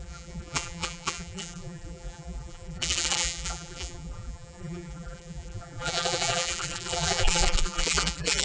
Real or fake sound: fake